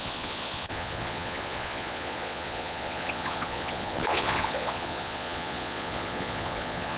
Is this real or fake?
fake